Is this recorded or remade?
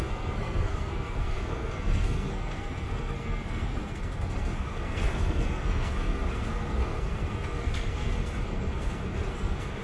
remade